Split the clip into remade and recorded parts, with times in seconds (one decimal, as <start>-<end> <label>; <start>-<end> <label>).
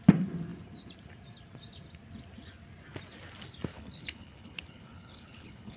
0.0-3.7 recorded; 3.7-5.8 remade